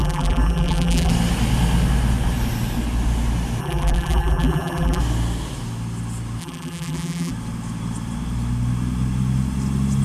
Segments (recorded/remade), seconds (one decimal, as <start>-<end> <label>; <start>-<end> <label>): 0.0-1.1 remade; 1.1-3.6 recorded; 3.6-5.0 remade; 5.0-6.4 recorded; 6.4-7.3 remade; 7.3-10.0 recorded